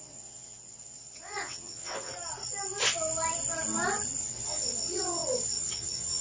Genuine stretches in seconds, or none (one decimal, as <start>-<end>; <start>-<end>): 2.1-4.2